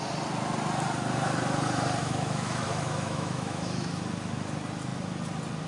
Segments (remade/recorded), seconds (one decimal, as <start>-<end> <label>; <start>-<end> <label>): 0.0-2.0 recorded; 2.0-3.9 remade; 3.9-5.7 recorded